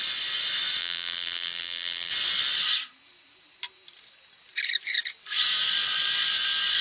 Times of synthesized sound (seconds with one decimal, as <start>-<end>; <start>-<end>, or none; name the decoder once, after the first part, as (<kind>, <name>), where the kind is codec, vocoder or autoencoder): 0.8-2.1 (vocoder, BigVGAN v2)